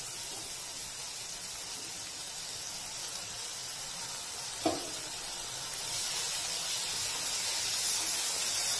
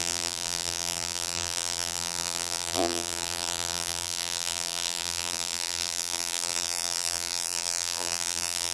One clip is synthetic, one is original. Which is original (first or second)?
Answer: first